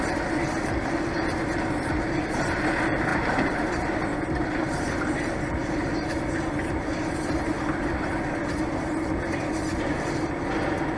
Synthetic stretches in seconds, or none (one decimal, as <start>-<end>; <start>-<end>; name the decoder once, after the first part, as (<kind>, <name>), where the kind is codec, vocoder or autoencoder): 3.1-3.9 (vocoder, BigVGAN v2); 5.6-6.2